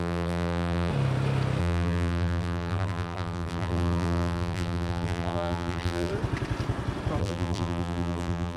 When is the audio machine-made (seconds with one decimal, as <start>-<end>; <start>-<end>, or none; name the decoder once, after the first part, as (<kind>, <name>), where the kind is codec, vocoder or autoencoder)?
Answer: 0.0-0.9 (vocoder, BigVGAN v2); 1.6-6.1; 7.2-8.6

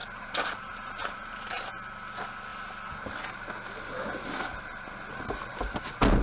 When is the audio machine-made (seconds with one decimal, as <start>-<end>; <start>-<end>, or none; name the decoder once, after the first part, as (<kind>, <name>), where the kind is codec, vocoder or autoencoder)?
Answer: 0.0-1.7 (vocoder, BigVGAN v2)